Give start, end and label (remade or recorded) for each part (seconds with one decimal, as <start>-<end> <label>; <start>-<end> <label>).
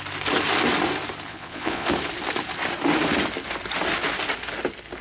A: 0.0-1.3 recorded; 1.3-1.9 remade; 1.9-5.0 recorded